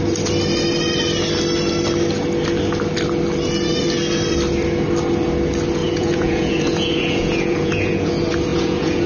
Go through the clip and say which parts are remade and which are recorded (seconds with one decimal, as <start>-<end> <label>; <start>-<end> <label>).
0.0-5.8 recorded; 5.8-8.1 remade; 8.1-8.5 recorded; 8.5-9.1 remade